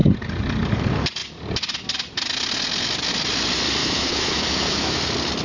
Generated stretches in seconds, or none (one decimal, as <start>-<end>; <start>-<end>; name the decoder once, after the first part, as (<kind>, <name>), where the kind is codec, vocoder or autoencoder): 3.8-5.0 (autoencoder, DAC-VAE)

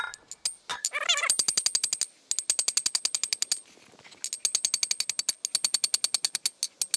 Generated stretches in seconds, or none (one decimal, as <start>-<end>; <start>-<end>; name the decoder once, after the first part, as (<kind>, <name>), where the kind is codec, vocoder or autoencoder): none

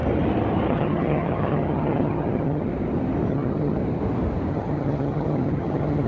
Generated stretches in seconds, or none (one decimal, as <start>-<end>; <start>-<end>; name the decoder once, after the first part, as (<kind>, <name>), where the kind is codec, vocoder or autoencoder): 0.7-2.7 (vocoder, HiFi-GAN); 3.3-3.8; 4.5-6.1

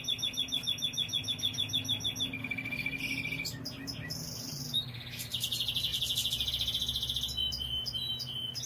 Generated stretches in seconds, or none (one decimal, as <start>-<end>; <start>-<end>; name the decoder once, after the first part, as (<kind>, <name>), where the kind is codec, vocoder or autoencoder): 2.4-3.0 (codec, SNAC)